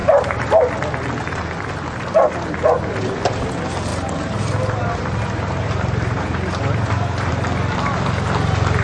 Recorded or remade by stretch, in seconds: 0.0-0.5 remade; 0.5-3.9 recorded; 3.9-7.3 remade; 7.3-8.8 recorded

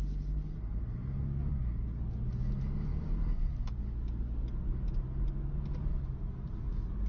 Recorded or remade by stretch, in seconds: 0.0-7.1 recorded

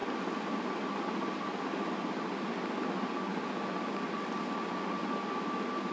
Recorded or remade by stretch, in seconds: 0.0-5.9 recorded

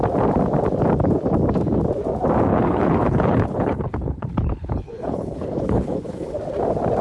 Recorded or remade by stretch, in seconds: 0.0-2.5 recorded; 2.5-6.4 remade; 6.4-7.0 recorded